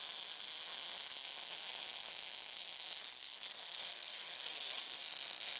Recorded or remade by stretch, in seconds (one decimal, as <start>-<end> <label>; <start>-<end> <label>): 0.0-3.0 recorded; 3.0-5.0 remade; 5.0-5.6 recorded